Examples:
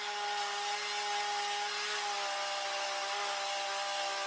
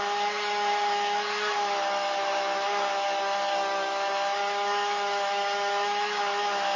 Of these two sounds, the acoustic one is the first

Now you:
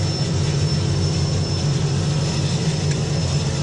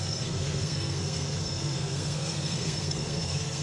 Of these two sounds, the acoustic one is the first